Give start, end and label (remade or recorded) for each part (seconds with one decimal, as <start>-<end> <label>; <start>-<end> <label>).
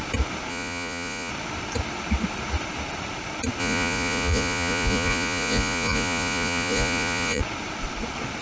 0.0-0.5 recorded; 0.5-1.3 remade; 1.3-3.6 recorded; 3.6-7.4 remade; 7.4-8.4 recorded